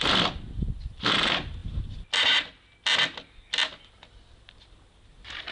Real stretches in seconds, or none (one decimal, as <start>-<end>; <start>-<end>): 0.0-5.5